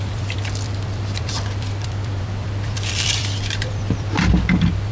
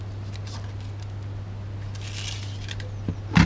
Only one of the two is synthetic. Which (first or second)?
first